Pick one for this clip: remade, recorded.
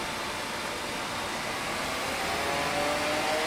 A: recorded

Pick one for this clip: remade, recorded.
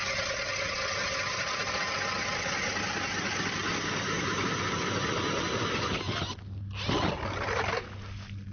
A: recorded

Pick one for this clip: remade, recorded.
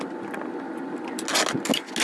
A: recorded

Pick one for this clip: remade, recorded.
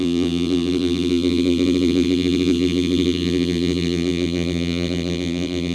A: remade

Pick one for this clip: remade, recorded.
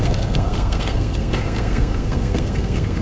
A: remade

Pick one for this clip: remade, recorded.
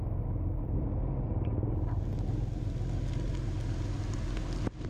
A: recorded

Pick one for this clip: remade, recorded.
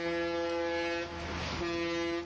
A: recorded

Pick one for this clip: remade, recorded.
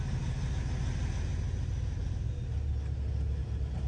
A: recorded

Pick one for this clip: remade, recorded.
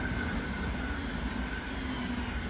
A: recorded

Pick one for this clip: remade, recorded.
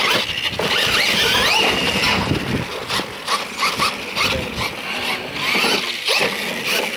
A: recorded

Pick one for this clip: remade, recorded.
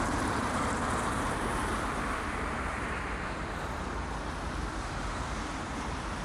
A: remade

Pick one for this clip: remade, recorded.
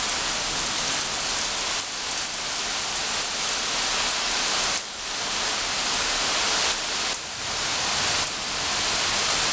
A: recorded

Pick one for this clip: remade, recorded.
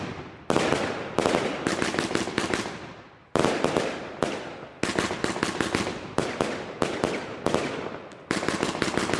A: recorded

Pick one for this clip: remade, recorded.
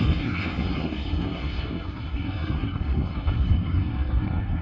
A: remade